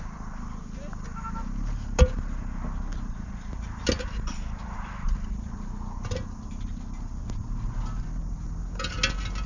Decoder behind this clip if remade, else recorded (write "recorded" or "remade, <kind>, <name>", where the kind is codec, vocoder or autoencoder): recorded